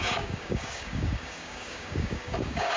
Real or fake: fake